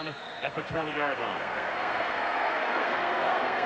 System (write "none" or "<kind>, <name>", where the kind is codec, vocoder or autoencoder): codec, SNAC